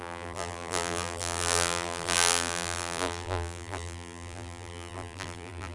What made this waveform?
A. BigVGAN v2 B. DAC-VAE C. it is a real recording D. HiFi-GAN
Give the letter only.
A